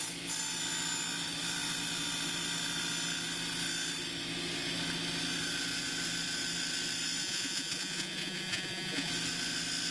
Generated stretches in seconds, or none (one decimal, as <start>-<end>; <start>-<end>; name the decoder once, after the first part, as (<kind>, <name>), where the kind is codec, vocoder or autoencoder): 7.2-9.1 (vocoder, Vocos)